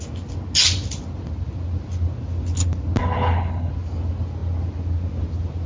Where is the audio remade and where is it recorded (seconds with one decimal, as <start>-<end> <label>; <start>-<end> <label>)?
0.0-3.0 recorded; 3.0-3.7 remade; 3.7-5.7 recorded